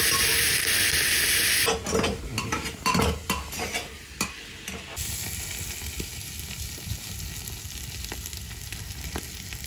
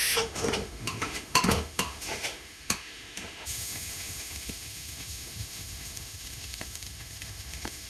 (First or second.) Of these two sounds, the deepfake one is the second